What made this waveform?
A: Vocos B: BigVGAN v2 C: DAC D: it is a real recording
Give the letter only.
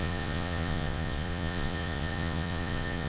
A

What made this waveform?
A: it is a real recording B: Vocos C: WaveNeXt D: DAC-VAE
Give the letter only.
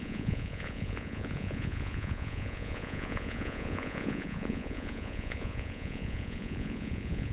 B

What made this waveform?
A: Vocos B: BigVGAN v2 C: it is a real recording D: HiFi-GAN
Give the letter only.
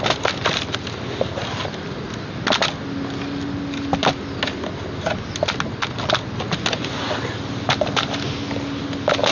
C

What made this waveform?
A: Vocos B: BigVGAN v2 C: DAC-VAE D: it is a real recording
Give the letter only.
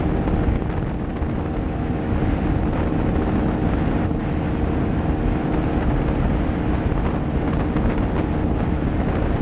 D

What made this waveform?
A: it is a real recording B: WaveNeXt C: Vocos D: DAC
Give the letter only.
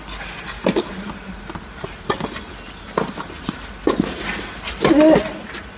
A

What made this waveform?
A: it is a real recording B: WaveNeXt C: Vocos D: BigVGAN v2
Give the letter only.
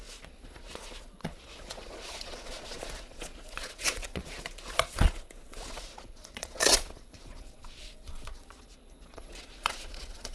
C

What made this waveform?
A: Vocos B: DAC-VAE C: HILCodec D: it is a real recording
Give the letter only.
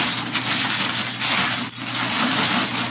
D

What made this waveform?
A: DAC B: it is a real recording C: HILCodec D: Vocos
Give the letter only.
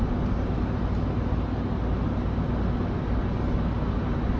B